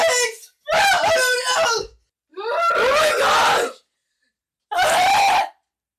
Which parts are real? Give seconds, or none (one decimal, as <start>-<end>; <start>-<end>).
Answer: 0.0-6.0

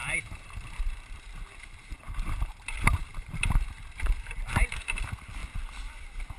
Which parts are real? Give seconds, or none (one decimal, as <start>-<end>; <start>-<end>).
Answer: 5.4-6.4

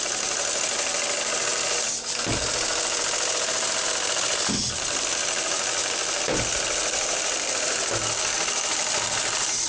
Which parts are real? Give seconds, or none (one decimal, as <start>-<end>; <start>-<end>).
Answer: 0.0-5.8

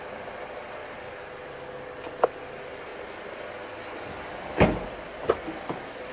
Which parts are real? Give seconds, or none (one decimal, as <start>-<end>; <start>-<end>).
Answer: 2.9-4.9

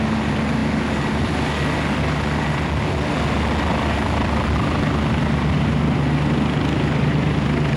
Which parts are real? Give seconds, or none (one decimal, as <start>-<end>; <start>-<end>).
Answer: 0.0-7.8